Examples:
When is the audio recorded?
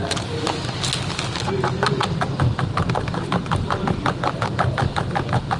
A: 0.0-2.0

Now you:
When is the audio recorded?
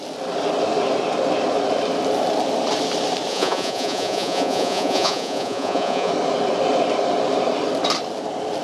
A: 0.0-3.3; 6.1-8.6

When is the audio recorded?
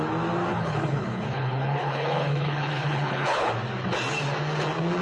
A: 0.0-0.5; 3.5-5.0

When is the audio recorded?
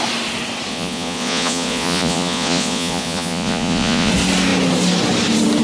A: 0.0-0.7; 4.1-5.6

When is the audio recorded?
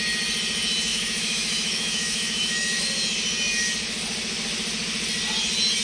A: 0.0-0.9; 2.8-5.8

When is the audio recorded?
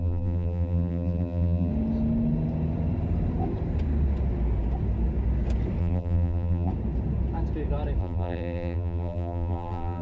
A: 1.7-5.8; 6.7-8.0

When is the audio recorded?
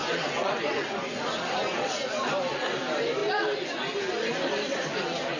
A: 0.5-5.4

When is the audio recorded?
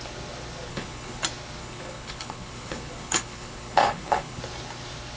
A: 0.0-0.7; 1.2-1.6; 4.4-5.2